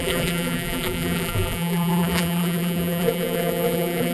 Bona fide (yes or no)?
no